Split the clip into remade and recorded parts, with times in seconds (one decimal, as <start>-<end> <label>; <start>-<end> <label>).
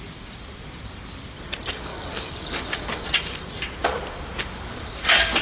0.0-5.4 remade